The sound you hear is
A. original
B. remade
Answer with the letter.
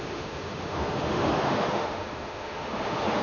B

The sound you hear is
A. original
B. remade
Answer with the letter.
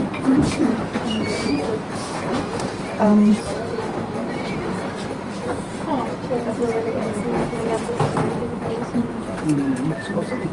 B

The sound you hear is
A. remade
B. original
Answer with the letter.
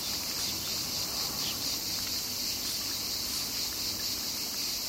B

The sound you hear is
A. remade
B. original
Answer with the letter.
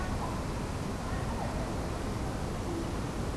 B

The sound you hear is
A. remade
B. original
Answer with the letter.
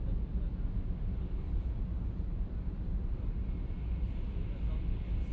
B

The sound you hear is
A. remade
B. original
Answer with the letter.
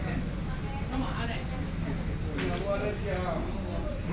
B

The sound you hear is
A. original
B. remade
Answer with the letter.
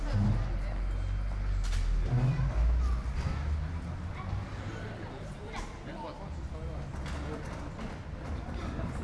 A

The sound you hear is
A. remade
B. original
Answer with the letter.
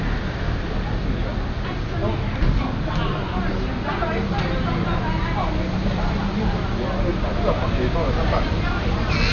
B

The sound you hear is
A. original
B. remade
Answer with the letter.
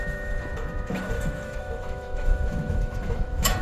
B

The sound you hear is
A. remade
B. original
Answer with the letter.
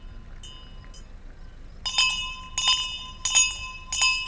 B